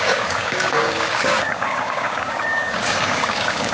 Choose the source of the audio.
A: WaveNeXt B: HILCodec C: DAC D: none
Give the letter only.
C